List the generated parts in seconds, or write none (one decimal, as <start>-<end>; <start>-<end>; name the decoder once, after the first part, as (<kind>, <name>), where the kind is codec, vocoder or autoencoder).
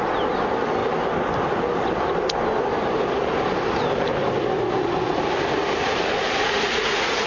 6.4-7.3 (vocoder, Vocos)